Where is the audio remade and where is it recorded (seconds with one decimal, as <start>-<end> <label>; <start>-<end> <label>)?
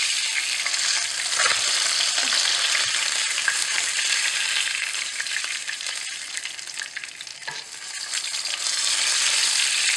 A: 0.0-3.0 recorded; 3.0-6.3 remade; 6.3-7.3 recorded; 7.3-8.1 remade; 8.1-10.0 recorded